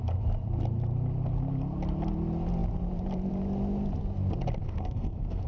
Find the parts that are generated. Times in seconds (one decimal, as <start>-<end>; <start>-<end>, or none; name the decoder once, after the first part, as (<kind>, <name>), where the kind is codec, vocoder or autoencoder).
4.6-5.5 (codec, SNAC)